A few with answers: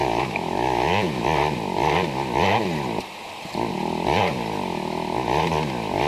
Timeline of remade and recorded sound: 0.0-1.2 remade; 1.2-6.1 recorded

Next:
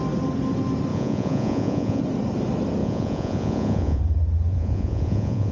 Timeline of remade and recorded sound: 0.0-0.9 recorded; 0.9-2.0 remade; 2.0-2.8 recorded; 2.8-4.0 remade; 4.0-4.5 recorded; 4.5-5.5 remade

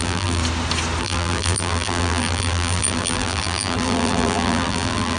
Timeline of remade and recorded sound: 0.0-0.4 remade; 0.4-1.0 recorded; 1.0-5.2 remade

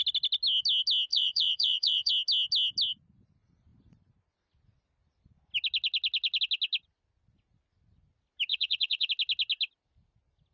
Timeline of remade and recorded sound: 0.0-1.1 recorded; 1.1-2.1 remade; 2.1-8.5 recorded; 8.5-9.1 remade; 9.1-10.5 recorded